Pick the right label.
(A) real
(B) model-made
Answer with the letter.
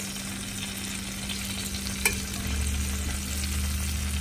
A